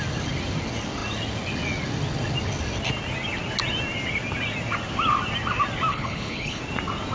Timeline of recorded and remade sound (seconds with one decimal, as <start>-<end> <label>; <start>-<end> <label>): 0.0-5.9 recorded; 5.9-6.6 remade; 6.6-7.1 recorded